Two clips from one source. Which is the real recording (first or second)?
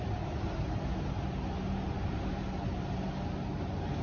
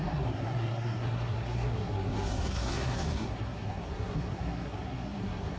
first